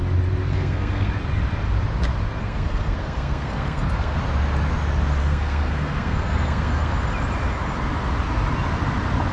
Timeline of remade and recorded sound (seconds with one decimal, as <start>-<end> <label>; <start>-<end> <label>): 0.0-0.5 recorded; 0.5-1.1 remade; 1.1-2.4 recorded; 2.4-4.2 remade; 4.2-5.2 recorded; 5.2-6.9 remade; 6.9-9.3 recorded